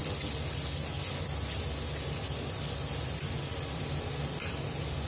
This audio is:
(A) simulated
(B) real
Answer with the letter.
B